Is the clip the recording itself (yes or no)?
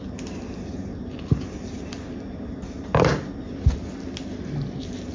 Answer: yes